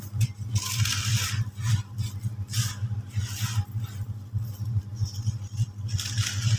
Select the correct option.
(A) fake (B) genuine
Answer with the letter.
B